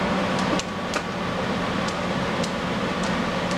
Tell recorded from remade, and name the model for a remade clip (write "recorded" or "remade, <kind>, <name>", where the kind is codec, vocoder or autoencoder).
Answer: recorded